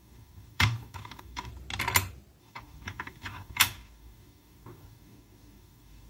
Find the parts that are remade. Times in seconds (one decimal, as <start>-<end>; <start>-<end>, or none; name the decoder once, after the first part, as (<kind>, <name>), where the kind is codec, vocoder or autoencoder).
0.0-1.5 (codec, DAC); 2.4-6.1